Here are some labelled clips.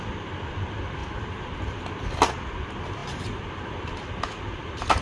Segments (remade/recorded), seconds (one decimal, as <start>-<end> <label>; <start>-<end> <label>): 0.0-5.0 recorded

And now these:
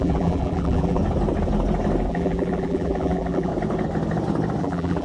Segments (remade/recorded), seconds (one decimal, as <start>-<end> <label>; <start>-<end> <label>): 0.0-1.0 remade; 1.0-2.1 recorded; 2.1-3.5 remade; 3.5-4.6 recorded; 4.6-5.0 remade

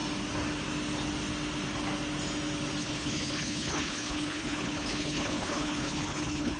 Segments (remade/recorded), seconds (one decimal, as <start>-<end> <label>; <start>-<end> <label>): 0.0-2.8 recorded; 2.8-6.6 remade

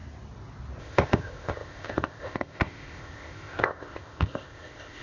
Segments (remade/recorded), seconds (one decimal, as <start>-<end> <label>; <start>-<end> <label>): 0.0-0.8 recorded; 0.8-5.0 remade

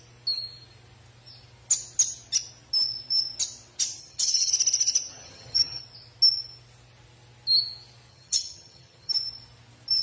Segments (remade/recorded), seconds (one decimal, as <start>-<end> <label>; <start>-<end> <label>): 0.0-4.0 recorded; 4.0-4.5 remade; 4.5-5.1 recorded; 5.1-5.8 remade; 5.8-8.1 recorded; 8.1-9.1 remade; 9.1-10.0 recorded

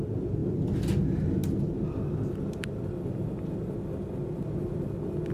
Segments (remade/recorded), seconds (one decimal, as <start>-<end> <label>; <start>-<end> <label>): 0.0-5.3 recorded

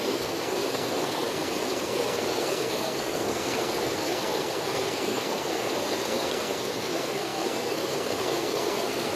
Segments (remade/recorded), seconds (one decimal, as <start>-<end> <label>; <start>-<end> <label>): 0.0-9.2 remade

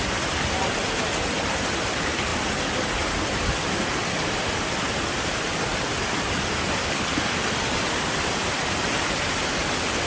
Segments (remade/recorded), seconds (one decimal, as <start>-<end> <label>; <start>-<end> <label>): 0.0-10.1 recorded